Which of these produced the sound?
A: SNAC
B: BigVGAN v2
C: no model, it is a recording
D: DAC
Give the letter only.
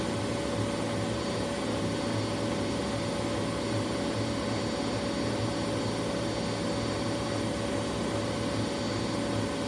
C